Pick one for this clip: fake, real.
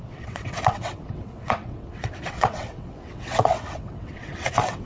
fake